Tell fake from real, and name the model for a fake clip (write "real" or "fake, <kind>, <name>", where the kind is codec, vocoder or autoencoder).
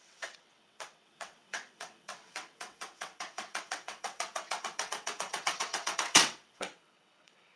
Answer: fake, vocoder, WaveNeXt